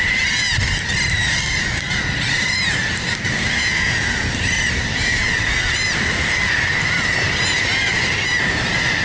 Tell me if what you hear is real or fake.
real